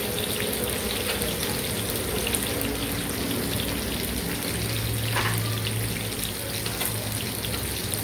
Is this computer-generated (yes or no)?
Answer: no